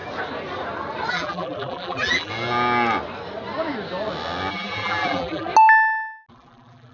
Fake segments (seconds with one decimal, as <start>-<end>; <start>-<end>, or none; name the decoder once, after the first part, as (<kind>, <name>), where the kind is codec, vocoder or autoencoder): 1.1-2.3 (vocoder, BigVGAN v2); 4.5-5.5; 6.3-6.9